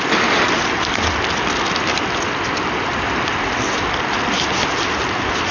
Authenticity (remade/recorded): recorded